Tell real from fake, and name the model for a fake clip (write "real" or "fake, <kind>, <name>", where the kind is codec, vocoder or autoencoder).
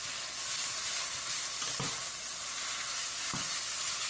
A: real